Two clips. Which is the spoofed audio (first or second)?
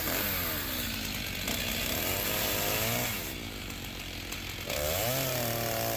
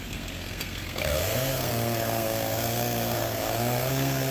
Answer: second